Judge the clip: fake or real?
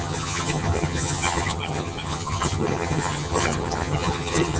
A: fake